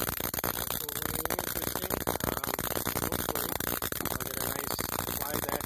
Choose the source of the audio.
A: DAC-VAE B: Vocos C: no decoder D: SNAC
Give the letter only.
C